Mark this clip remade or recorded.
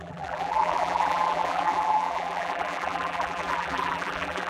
remade